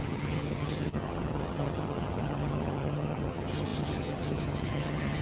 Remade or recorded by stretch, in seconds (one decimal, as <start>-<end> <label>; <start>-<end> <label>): 0.0-5.2 remade